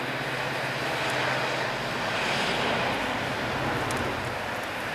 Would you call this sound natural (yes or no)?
yes